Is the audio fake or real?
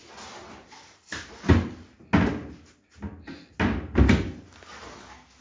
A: real